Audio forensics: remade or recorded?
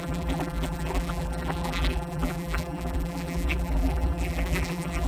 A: remade